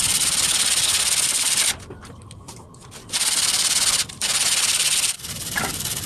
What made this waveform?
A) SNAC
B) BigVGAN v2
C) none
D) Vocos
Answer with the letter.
C